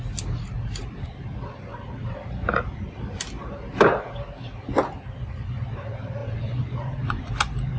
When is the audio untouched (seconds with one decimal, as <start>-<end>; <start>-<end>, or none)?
0.0-6.2; 7.3-7.8